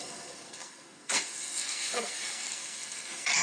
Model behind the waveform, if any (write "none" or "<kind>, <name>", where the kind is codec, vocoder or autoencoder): codec, SNAC